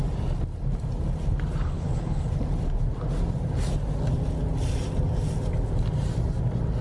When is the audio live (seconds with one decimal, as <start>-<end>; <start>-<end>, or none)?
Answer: 0.0-1.6; 2.3-6.8